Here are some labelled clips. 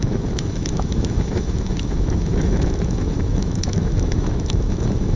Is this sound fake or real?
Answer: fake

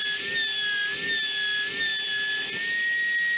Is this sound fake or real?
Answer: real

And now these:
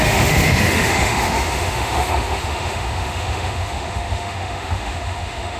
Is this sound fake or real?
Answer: fake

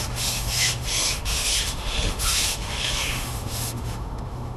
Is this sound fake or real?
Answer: fake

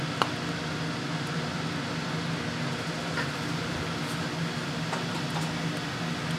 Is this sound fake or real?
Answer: real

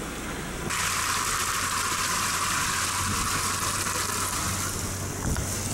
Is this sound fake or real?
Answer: real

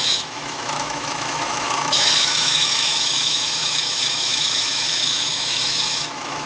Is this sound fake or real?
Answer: fake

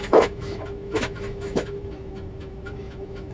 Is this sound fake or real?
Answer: fake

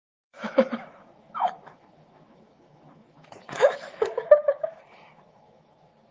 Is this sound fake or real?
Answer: fake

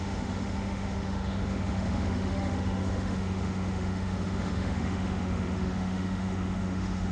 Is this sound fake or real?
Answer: fake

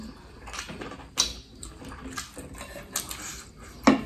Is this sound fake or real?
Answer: real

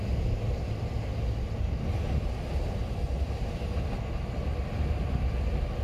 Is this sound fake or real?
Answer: real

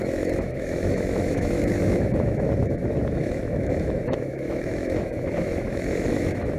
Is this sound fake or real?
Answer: fake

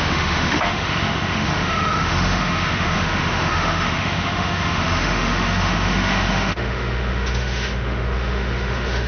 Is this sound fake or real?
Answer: fake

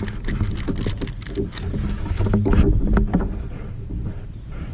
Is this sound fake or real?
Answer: real